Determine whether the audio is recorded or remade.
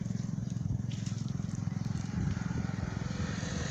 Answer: remade